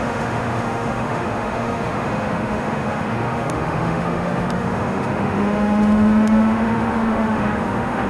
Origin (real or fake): fake